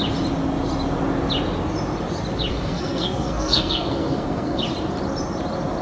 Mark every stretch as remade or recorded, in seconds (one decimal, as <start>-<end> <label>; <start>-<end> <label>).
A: 0.0-2.5 recorded; 2.5-4.6 remade; 4.6-5.8 recorded